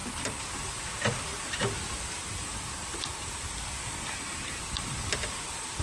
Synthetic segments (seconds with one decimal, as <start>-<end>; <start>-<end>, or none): none